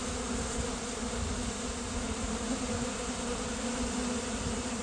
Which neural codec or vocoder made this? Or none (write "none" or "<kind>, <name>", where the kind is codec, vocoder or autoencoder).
none